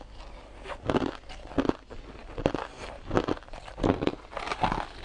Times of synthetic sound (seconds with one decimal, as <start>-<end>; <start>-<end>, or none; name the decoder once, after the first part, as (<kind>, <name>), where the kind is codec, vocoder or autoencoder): none